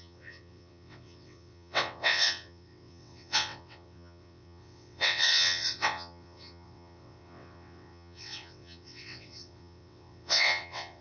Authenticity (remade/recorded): remade